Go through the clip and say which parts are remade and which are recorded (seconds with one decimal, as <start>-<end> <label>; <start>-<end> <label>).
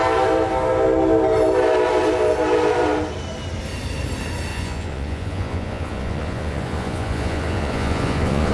0.0-4.5 recorded; 4.5-8.5 remade